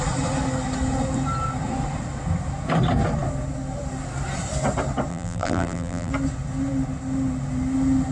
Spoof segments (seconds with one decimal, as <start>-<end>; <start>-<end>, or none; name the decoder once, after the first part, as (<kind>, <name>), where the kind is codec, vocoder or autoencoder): 5.1-6.1 (vocoder, BigVGAN v2)